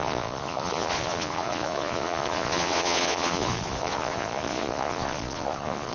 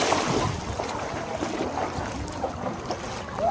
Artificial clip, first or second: first